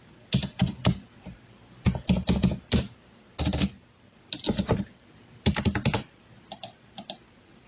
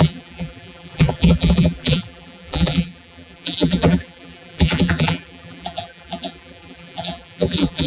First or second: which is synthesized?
second